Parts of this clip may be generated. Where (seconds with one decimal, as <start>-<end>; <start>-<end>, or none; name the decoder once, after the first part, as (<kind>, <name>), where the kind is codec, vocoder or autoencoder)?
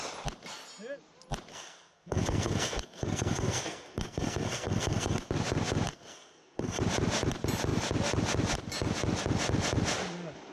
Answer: 1.5-5.3 (codec, SNAC); 5.9-6.8